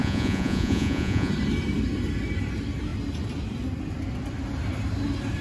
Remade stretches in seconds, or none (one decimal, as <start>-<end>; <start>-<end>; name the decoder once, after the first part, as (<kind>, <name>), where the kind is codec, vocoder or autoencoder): 0.0-1.3 (vocoder, Vocos)